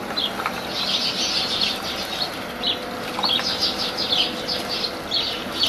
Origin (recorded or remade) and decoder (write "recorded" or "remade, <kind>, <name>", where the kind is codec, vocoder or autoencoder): recorded